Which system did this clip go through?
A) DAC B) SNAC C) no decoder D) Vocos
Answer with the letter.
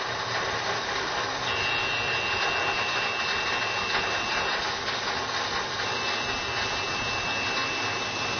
C